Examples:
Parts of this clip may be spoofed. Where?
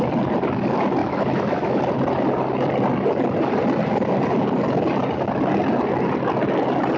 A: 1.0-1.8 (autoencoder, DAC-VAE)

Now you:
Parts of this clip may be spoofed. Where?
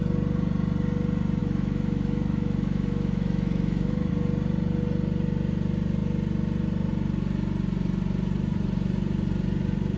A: 1.4-4.1 (autoencoder, DAC-VAE)